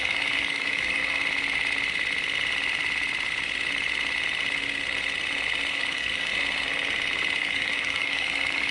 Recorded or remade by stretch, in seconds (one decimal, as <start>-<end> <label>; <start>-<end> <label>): 0.0-1.0 remade; 1.0-5.7 recorded; 5.7-6.3 remade; 6.3-7.4 recorded; 7.4-8.7 remade